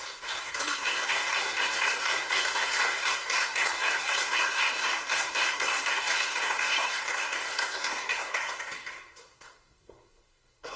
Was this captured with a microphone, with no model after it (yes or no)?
no